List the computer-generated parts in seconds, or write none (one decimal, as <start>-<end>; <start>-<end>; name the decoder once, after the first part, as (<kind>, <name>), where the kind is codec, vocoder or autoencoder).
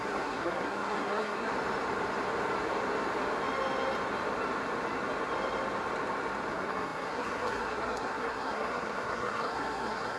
0.0-1.5 (codec, SNAC); 6.5-10.2